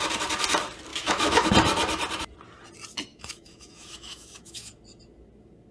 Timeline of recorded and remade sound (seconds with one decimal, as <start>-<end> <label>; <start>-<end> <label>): 0.0-0.9 recorded; 0.9-1.5 remade; 1.5-3.1 recorded; 3.1-4.7 remade; 4.7-5.7 recorded